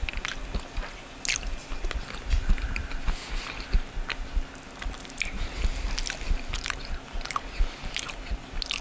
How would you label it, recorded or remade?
recorded